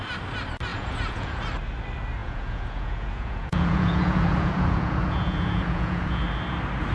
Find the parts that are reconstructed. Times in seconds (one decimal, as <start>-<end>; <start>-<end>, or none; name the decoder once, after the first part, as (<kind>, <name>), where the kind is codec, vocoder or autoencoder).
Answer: 0.7-1.4 (vocoder, Vocos); 2.2-6.2